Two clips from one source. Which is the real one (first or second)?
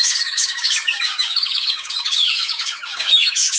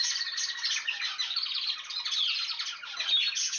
second